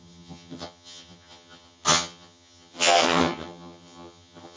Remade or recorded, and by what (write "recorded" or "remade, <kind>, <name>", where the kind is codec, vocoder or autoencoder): remade, vocoder, HiFi-GAN